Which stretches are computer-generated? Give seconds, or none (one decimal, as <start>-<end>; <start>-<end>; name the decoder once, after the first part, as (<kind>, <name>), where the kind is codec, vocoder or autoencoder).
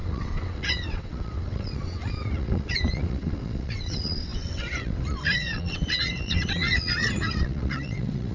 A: 0.0-8.3 (vocoder, WaveNeXt)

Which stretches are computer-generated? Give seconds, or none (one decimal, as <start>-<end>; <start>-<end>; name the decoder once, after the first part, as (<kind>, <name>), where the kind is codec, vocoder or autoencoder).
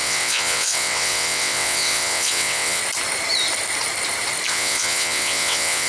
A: 0.0-2.8 (vocoder, WaveNeXt); 4.5-5.9